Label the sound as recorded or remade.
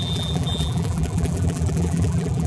remade